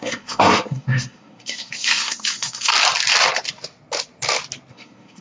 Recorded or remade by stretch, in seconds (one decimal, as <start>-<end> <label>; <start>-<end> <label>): 0.0-2.7 remade; 2.7-4.7 recorded; 4.7-5.2 remade